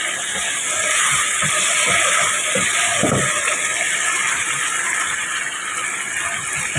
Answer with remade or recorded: recorded